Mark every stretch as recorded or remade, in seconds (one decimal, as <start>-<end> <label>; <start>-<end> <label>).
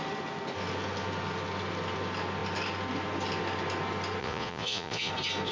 0.0-4.2 recorded; 4.2-5.1 remade; 5.1-5.5 recorded